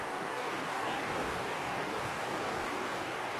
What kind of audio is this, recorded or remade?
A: remade